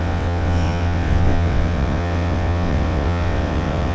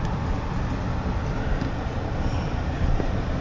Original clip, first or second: second